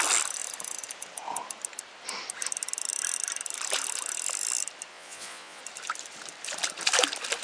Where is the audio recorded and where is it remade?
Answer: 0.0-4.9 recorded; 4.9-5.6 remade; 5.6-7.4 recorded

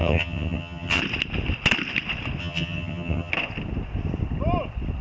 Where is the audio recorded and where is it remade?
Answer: 0.0-1.0 remade; 1.0-2.4 recorded; 2.4-3.3 remade; 3.3-5.0 recorded

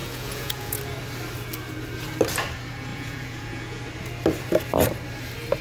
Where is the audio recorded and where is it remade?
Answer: 0.0-0.8 remade; 0.8-2.9 recorded; 2.9-3.8 remade; 3.8-5.6 recorded

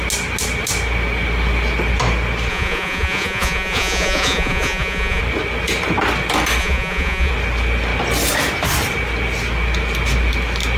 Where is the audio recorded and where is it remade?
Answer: 0.0-2.5 recorded; 2.5-5.2 remade; 5.2-6.6 recorded; 6.6-7.3 remade; 7.3-10.8 recorded

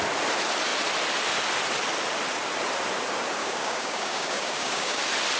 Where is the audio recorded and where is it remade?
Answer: 0.0-3.4 recorded; 3.4-5.0 remade; 5.0-5.4 recorded

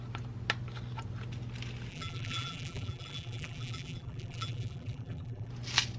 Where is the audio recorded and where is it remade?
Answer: 0.0-1.9 recorded; 1.9-5.5 remade; 5.5-6.0 recorded